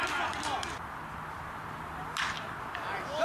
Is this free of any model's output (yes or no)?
yes